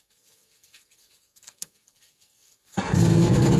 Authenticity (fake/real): fake